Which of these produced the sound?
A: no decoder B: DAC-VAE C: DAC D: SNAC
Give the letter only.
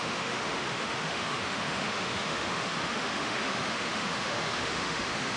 B